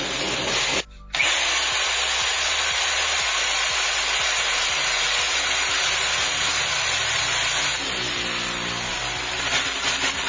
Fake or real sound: real